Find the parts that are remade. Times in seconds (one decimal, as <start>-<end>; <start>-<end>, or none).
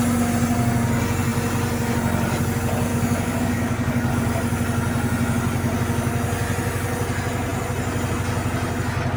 2.9-4.1